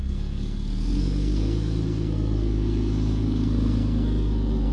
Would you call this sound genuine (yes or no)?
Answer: no